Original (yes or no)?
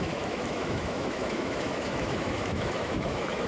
no